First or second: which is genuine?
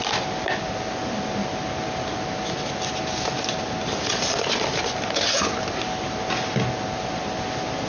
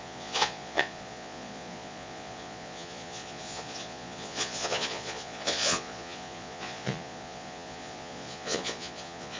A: first